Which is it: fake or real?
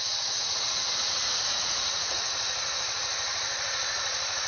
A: fake